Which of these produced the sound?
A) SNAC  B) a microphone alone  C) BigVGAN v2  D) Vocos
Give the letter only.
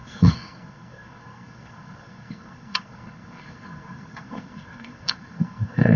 A